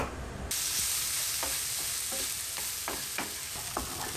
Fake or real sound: real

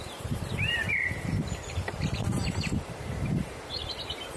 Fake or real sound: fake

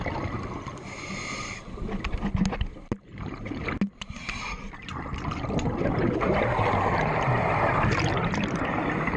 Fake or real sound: real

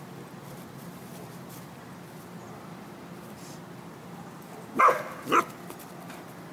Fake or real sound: real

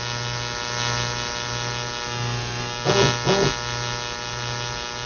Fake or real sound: real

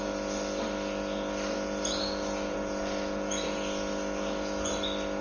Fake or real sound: real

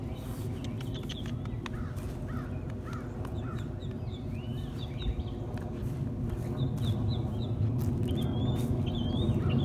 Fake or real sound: real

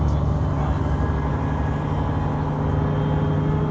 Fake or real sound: real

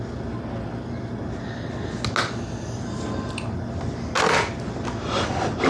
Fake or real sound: real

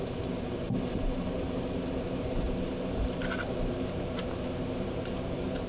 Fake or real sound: fake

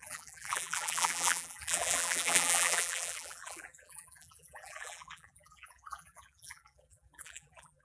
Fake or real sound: fake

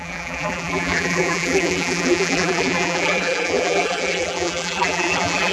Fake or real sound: fake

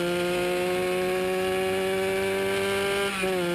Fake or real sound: real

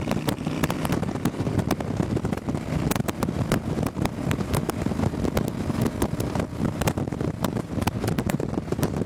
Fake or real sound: real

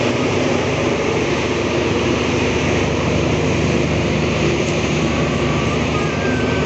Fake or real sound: fake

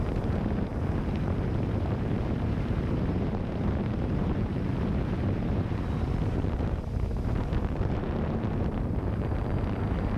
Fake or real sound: fake